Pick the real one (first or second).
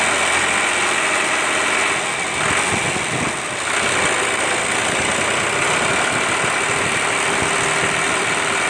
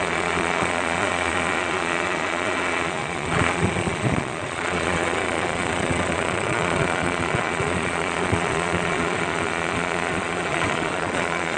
first